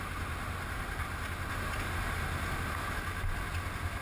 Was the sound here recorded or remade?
recorded